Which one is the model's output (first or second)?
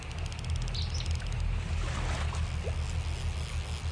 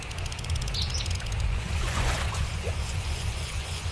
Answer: second